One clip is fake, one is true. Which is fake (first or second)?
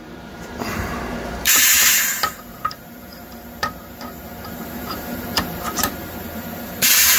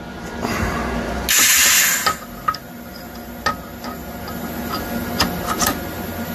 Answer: first